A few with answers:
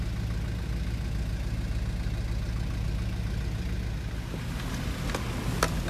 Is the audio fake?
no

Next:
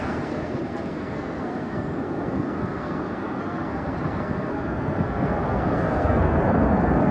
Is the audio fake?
yes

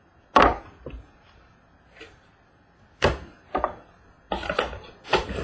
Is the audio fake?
no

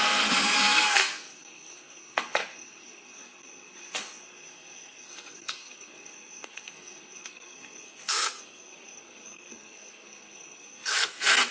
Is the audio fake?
yes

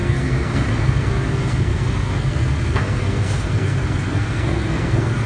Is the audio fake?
yes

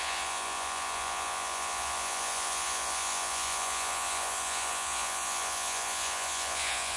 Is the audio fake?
yes